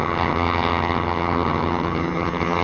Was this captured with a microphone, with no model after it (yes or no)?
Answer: no